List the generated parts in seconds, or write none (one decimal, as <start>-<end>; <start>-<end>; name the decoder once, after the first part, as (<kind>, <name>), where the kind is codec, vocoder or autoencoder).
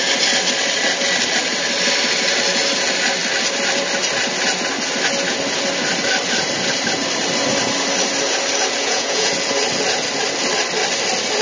8.8-9.3 (vocoder, Vocos)